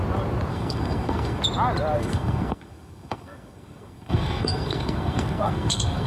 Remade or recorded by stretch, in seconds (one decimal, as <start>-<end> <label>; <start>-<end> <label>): 0.0-0.5 recorded; 0.5-1.4 remade; 1.4-2.0 recorded; 2.0-6.1 remade